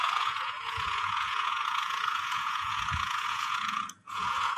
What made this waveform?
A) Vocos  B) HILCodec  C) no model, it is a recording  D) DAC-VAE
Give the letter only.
A